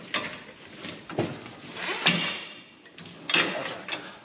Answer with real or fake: real